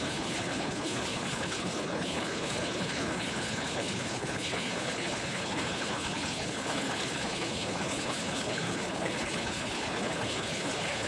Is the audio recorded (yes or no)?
no